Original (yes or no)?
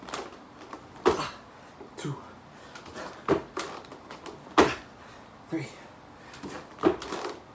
yes